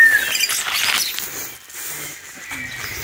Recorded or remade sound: recorded